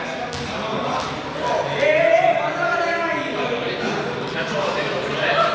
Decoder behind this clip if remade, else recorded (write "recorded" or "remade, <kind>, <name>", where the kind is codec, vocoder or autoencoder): recorded